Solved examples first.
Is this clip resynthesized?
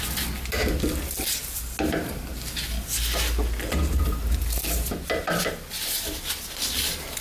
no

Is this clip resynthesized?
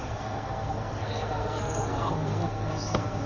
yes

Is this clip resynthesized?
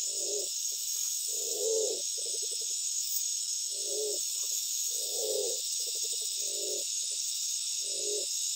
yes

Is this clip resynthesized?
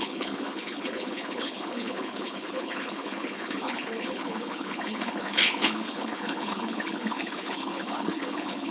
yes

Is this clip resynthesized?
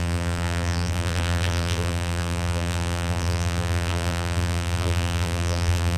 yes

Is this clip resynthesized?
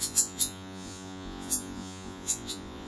yes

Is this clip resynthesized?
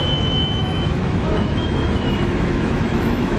yes